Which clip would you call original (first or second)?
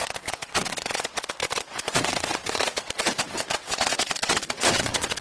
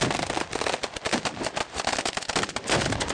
second